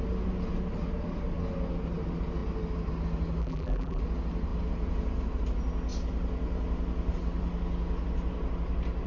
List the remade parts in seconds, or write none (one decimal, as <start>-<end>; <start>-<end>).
3.4-4.0